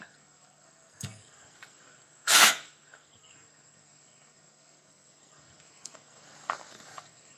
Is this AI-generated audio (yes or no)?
yes